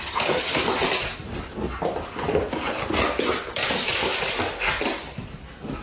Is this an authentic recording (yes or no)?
yes